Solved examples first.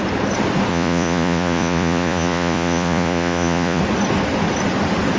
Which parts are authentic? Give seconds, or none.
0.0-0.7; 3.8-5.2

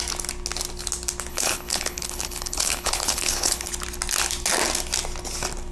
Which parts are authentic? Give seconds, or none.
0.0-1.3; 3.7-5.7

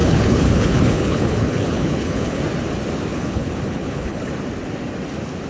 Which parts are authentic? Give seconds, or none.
2.4-3.1; 4.3-5.5